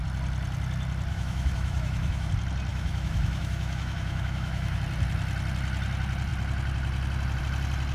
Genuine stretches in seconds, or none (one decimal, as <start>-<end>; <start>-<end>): 0.0-1.1; 2.3-2.7; 4.8-7.9